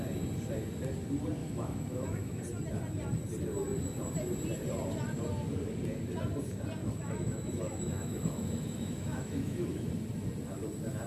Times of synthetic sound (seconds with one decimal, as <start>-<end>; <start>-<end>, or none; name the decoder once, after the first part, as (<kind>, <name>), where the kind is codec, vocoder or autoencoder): 1.4-2.4 (autoencoder, DAC-VAE); 6.8-9.9